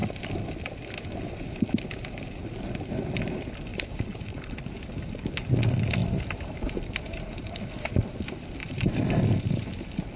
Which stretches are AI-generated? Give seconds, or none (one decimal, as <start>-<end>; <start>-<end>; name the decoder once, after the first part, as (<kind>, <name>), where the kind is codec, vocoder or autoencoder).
3.7-5.1 (vocoder, BigVGAN v2); 6.0-7.5; 8.6-9.1